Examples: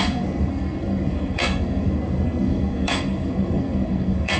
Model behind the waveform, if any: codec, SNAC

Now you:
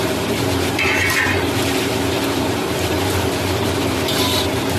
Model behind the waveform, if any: vocoder, BigVGAN v2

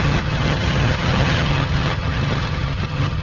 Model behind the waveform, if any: vocoder, HiFi-GAN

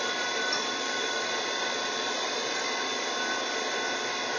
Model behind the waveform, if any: vocoder, BigVGAN v2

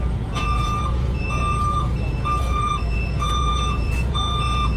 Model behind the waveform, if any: vocoder, Vocos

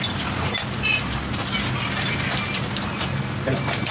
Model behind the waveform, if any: none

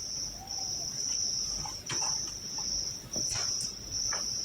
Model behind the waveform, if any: none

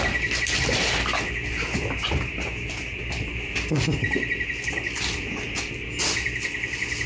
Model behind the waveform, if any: none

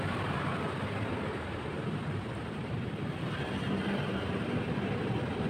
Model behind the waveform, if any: vocoder, BigVGAN v2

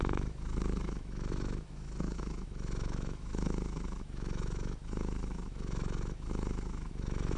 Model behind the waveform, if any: autoencoder, DAC-VAE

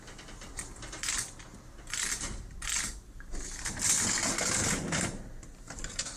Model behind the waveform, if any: none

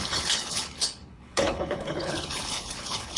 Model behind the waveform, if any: codec, HILCodec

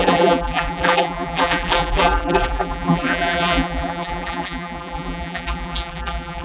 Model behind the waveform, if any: vocoder, BigVGAN v2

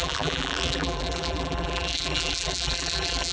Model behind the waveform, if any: vocoder, BigVGAN v2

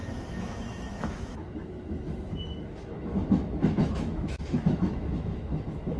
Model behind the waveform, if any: autoencoder, DAC-VAE